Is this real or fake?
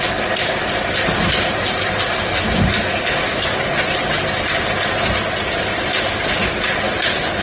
real